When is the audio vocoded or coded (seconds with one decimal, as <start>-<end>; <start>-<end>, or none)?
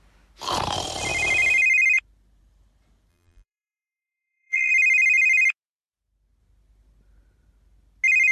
3.1-4.7